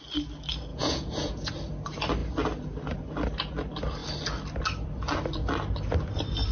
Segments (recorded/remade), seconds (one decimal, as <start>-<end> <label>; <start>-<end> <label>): 0.0-0.7 recorded; 0.7-1.5 remade; 1.5-6.5 recorded